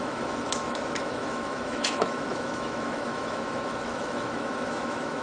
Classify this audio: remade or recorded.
remade